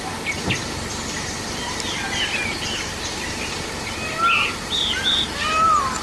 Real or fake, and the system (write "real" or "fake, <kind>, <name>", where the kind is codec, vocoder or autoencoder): real